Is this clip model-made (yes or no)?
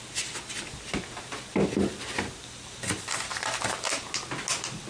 no